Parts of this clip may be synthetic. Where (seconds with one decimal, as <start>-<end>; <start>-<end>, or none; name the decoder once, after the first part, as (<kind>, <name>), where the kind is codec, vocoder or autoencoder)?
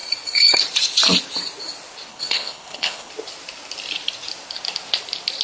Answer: 2.1-3.1 (codec, HILCodec)